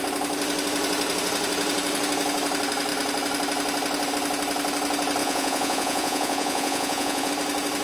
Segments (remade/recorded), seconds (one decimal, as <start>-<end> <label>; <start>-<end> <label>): 0.0-5.2 recorded; 5.2-7.3 remade; 7.3-7.8 recorded